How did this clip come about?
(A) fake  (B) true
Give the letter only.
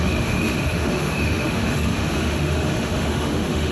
A